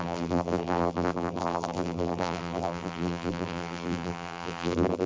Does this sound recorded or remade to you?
remade